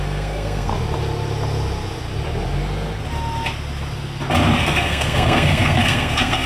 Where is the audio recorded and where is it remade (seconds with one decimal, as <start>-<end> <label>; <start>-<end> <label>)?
0.0-0.7 remade; 0.7-4.6 recorded; 4.6-6.5 remade